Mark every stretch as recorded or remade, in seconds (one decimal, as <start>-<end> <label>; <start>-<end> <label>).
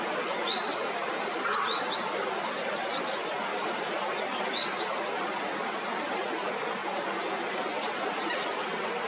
0.0-3.5 recorded; 3.5-4.4 remade; 4.4-9.1 recorded